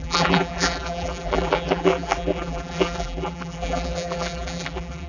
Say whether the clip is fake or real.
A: fake